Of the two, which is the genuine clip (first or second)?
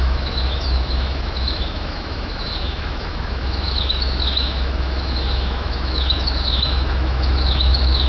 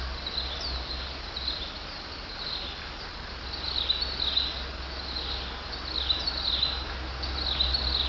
second